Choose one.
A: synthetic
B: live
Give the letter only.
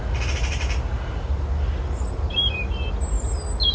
B